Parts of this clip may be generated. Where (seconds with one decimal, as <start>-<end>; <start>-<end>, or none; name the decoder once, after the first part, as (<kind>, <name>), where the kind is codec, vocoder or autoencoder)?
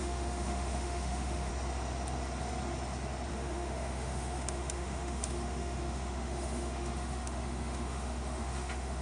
0.0-1.5 (autoencoder, DAC-VAE); 3.3-9.0